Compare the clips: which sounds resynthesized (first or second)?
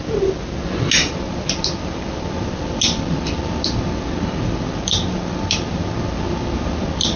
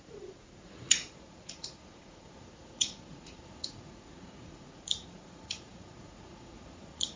second